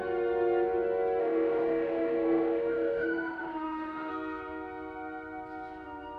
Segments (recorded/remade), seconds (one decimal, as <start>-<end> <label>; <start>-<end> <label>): 0.0-1.2 recorded; 1.2-4.1 remade; 4.1-6.2 recorded